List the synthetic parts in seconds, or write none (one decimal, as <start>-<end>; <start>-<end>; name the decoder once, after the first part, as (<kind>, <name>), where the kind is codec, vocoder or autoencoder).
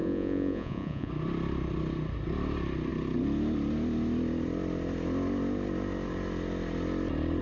0.0-1.1 (vocoder, Vocos)